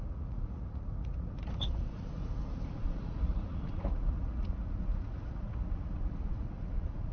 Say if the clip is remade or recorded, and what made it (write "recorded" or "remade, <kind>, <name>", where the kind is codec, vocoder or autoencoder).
remade, vocoder, Vocos